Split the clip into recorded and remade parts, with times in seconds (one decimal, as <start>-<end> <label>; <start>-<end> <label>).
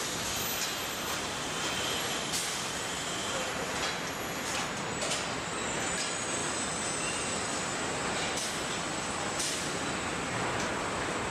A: 0.0-2.4 recorded; 2.4-4.5 remade; 4.5-11.3 recorded